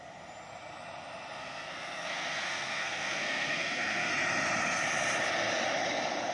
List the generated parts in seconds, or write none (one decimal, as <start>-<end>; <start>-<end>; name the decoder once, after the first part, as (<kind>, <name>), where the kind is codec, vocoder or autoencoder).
1.4-4.1 (codec, SNAC)